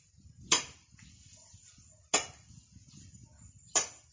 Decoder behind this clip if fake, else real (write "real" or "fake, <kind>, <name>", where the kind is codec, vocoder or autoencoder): real